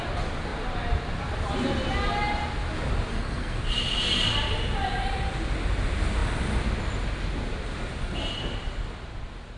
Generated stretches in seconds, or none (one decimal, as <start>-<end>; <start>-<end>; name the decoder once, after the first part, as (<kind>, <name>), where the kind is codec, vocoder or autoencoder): 3.1-3.6 (codec, SNAC)